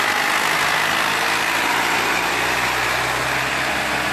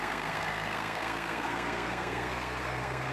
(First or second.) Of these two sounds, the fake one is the second